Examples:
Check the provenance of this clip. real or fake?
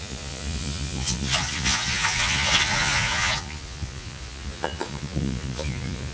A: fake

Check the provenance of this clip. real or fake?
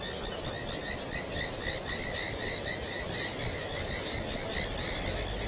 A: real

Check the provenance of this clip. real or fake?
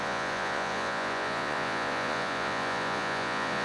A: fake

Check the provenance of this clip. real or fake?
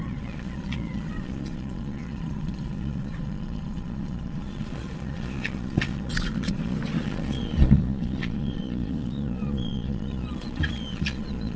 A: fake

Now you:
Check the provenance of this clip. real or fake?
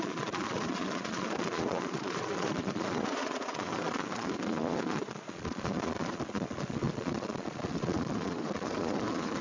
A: fake